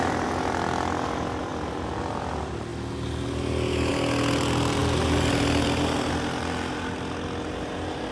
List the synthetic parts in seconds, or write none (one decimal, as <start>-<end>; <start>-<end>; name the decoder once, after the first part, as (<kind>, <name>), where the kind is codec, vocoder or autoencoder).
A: none